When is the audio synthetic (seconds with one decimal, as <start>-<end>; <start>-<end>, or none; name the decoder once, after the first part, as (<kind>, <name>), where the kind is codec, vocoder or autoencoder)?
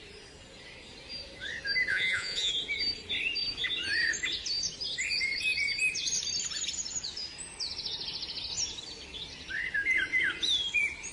1.9-2.5 (vocoder, Vocos)